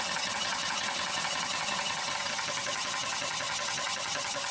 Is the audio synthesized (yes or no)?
yes